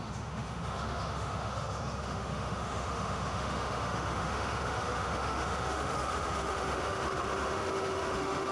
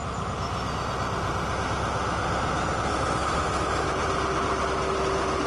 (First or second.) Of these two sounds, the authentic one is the second